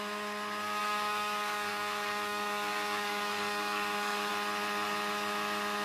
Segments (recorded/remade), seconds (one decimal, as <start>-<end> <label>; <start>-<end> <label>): 0.0-0.8 recorded; 0.8-4.3 remade; 4.3-5.8 recorded